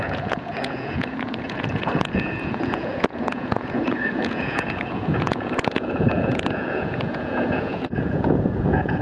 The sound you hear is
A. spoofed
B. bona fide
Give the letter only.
A